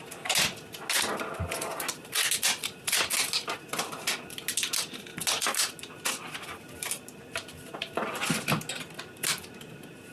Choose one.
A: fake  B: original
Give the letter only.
B